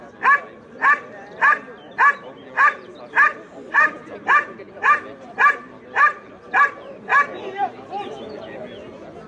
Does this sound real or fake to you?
real